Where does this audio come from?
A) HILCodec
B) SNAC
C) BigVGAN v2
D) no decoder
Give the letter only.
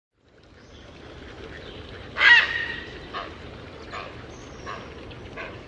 D